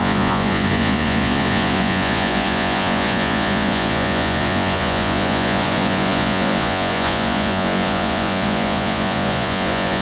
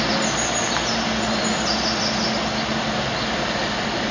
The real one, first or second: second